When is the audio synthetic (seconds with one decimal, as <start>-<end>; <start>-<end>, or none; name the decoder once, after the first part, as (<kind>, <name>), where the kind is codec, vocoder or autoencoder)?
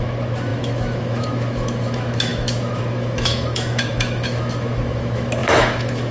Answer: 0.0-6.1 (autoencoder, DAC-VAE)